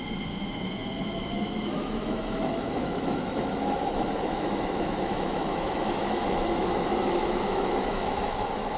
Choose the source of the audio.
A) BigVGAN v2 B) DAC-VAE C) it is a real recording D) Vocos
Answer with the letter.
B